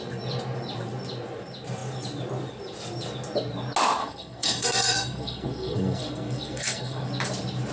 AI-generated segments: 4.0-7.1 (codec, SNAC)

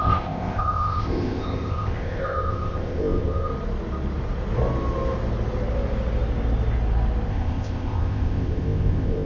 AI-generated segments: 0.0-3.5 (codec, ZipCodec); 7.3-9.3

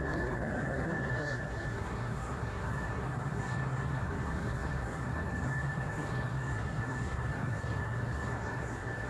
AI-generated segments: 0.0-9.1 (codec, SNAC)

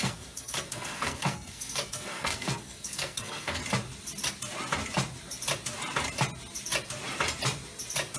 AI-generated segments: 0.0-3.6 (codec, SNAC)

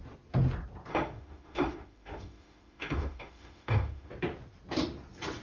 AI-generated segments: 0.9-4.1 (autoencoder, DAC-VAE)

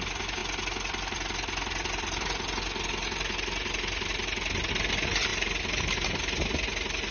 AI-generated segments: none

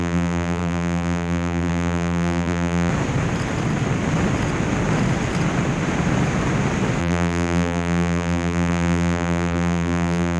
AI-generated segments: 0.0-2.9 (vocoder, BigVGAN v2); 7.0-10.4